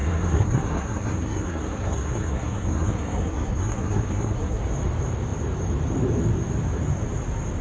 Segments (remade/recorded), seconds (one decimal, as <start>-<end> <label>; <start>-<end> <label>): 0.0-4.6 remade; 4.6-7.6 recorded